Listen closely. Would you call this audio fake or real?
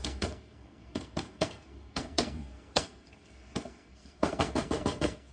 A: fake